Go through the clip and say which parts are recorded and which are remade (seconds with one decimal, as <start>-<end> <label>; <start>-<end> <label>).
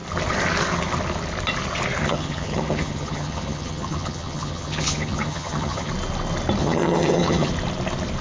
0.0-2.0 recorded; 2.0-5.9 remade; 5.9-6.6 recorded; 6.6-7.5 remade; 7.5-8.2 recorded